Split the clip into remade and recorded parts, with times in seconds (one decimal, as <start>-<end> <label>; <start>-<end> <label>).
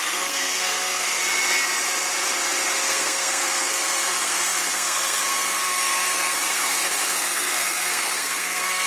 0.0-1.2 remade; 1.2-2.9 recorded; 2.9-8.9 remade